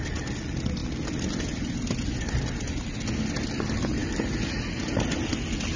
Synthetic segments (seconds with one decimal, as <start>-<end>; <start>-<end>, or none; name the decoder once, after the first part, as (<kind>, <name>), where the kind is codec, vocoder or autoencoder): none